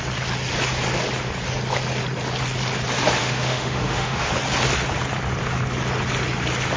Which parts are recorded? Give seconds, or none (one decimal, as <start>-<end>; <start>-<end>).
0.0-3.2; 4.3-6.8